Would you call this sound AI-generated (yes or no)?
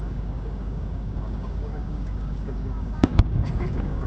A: yes